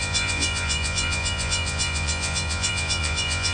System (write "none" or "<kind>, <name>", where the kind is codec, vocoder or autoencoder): vocoder, Vocos